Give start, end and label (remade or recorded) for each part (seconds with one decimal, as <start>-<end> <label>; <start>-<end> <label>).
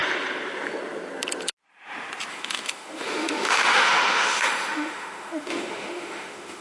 0.0-2.3 recorded; 2.3-6.6 remade